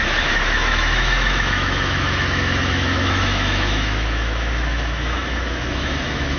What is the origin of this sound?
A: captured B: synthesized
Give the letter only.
B